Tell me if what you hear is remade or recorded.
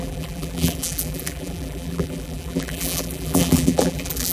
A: remade